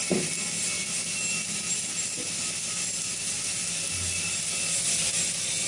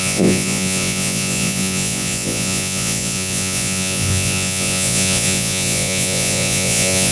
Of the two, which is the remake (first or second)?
second